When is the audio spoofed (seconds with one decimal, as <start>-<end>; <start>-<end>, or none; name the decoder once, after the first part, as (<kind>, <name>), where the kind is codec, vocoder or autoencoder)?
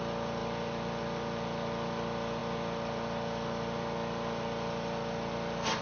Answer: none